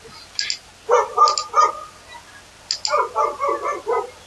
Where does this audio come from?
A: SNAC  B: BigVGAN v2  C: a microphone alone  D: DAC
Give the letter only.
C